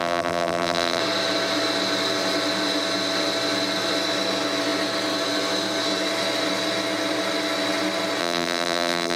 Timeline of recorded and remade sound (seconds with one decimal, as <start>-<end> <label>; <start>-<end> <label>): 0.0-1.0 remade; 1.0-8.2 recorded; 8.2-9.2 remade